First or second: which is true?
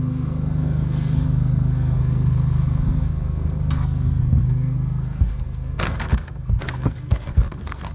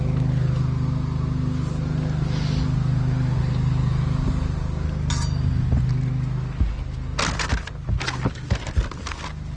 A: second